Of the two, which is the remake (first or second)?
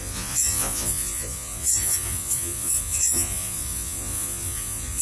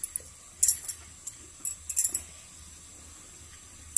first